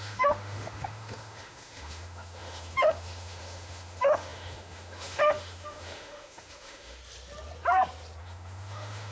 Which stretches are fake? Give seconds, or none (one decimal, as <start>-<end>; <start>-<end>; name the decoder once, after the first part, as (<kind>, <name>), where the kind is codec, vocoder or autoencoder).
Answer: 0.0-7.0 (autoencoder, DAC-VAE); 8.2-9.1